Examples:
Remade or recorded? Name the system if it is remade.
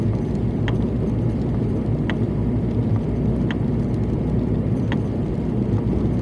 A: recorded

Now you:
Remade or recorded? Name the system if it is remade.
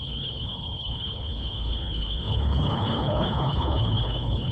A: remade, codec, HILCodec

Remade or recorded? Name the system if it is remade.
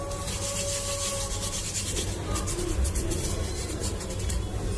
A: recorded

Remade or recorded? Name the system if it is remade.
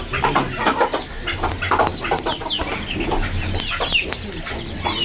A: recorded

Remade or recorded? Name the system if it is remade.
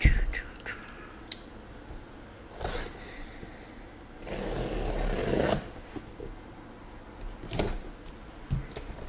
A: recorded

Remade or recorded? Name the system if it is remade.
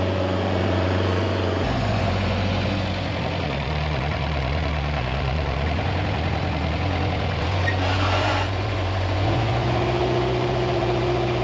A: remade, vocoder, Vocos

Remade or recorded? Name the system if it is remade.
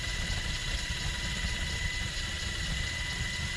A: recorded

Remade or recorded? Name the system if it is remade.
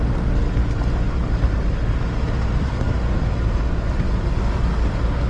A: recorded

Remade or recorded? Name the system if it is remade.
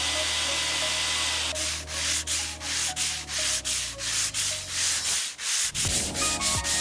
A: recorded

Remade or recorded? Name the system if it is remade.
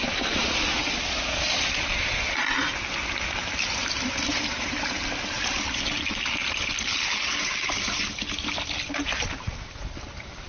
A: recorded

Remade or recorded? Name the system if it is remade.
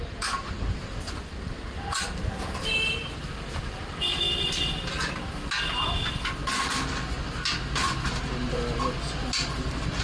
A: recorded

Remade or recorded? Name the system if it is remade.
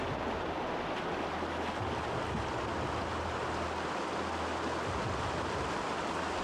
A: recorded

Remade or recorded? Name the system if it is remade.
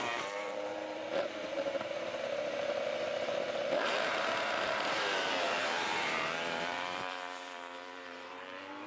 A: remade, vocoder, BigVGAN v2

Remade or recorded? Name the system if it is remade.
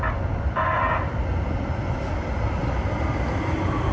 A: recorded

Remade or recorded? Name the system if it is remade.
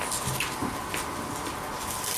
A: recorded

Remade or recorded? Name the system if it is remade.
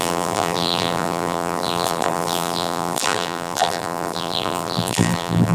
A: remade, vocoder, BigVGAN v2